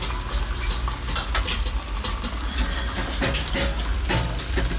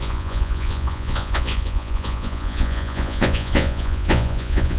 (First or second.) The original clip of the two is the first